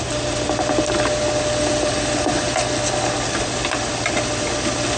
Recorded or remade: recorded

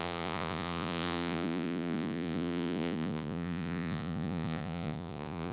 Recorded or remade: remade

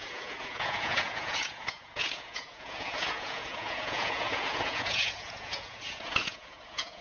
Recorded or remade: remade